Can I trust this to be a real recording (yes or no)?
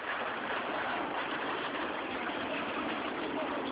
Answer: yes